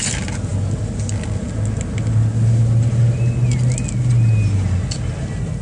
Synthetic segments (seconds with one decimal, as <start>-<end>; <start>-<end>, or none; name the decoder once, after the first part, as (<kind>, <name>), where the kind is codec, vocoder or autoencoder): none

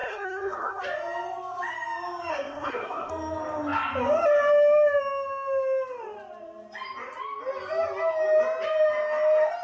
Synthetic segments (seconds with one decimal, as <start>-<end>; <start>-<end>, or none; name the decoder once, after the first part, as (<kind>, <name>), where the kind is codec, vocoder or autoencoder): 0.0-0.8 (codec, SNAC); 2.3-3.1

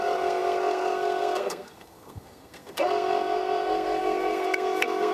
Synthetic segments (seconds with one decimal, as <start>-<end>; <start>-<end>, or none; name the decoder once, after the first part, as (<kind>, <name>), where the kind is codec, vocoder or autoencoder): 0.0-5.1 (codec, SNAC)

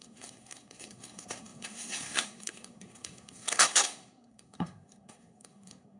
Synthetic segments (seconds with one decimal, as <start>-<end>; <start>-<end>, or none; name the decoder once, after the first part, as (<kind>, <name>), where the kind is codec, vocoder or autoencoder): 0.0-6.0 (codec, SNAC)

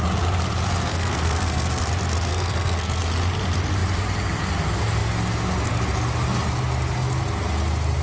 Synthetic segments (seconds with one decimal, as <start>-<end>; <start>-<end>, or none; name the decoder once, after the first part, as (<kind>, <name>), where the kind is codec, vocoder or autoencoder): 0.9-1.8 (codec, SNAC); 2.3-3.0